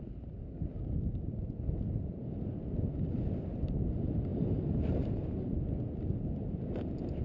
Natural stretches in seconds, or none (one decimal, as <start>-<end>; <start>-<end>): 0.0-4.3; 5.6-7.2

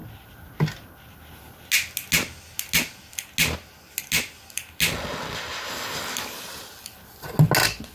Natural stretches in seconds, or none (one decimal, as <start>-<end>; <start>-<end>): 0.0-7.9

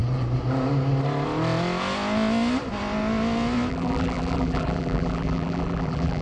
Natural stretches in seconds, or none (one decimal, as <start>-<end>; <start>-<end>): 0.0-3.7

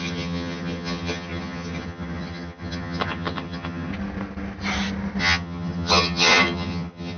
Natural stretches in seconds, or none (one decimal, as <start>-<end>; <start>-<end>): 3.9-5.2

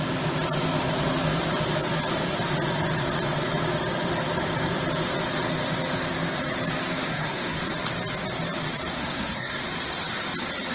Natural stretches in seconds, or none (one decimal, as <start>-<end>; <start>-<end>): 0.0-7.1; 7.6-9.0; 9.6-10.7

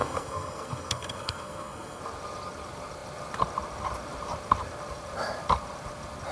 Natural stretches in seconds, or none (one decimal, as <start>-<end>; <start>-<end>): 2.0-6.3